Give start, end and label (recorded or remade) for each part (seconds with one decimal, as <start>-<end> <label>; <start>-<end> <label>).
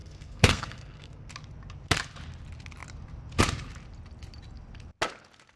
0.0-1.3 remade; 1.3-5.6 recorded